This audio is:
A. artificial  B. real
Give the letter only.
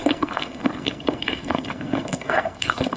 A